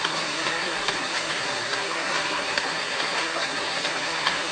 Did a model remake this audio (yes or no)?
yes